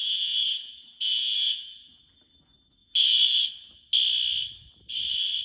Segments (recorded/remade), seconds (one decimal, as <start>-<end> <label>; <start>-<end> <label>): 0.0-2.0 remade; 2.0-5.4 recorded